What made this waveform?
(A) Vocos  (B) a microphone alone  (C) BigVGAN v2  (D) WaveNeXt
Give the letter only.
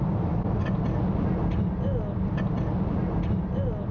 B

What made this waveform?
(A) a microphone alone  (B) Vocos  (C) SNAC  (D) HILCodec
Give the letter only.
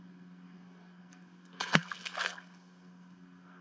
C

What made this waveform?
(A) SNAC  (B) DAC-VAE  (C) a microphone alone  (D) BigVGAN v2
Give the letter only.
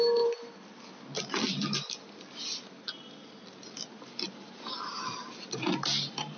C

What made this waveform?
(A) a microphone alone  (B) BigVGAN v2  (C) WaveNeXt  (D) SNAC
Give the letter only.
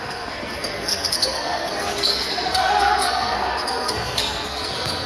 D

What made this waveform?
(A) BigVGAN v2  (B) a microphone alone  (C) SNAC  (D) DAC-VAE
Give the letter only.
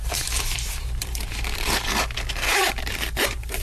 A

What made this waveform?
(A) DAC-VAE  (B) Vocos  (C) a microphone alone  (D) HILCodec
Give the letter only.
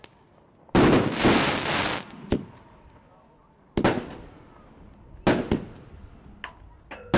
C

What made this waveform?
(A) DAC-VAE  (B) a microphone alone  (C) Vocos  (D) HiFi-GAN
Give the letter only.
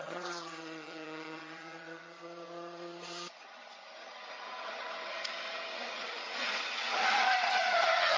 D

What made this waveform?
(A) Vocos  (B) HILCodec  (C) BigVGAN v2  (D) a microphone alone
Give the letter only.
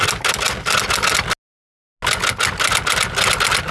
D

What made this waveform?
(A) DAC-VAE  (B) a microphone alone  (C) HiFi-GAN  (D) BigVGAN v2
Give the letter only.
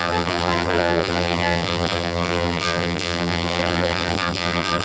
D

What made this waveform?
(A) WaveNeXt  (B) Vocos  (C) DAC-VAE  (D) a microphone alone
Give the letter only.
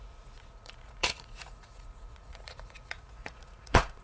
B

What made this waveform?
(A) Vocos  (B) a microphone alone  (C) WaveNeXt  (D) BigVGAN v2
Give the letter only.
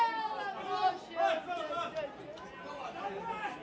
B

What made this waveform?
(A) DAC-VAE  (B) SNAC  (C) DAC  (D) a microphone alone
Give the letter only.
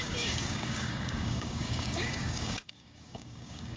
C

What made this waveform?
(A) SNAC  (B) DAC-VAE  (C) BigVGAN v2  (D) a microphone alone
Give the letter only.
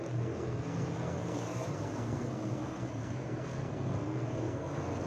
A